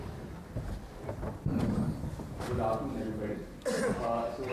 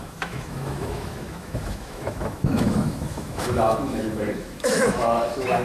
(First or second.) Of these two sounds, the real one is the first